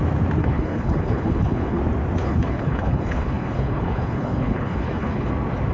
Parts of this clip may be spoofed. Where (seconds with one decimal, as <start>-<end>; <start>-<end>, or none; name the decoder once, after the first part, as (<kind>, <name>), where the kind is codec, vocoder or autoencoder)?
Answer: 0.4-1.8 (codec, HILCodec); 2.2-5.3